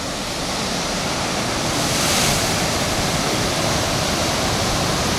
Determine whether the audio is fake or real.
fake